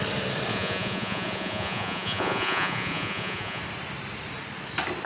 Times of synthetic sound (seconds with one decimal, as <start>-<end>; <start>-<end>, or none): 0.5-3.6